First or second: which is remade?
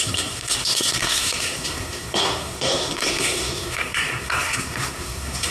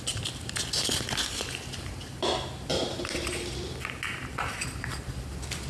first